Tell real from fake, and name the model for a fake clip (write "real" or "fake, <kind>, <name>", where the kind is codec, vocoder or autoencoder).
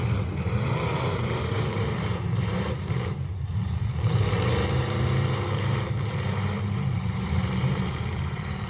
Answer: fake, vocoder, BigVGAN v2